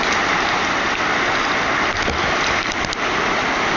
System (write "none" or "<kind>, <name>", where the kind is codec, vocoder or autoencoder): none